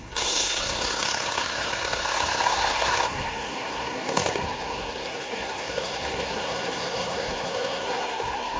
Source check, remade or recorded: remade